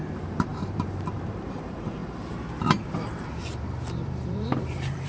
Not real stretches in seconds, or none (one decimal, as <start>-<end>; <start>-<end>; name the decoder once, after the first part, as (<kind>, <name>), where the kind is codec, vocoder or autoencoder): 0.0-2.0 (vocoder, BigVGAN v2); 3.3-5.1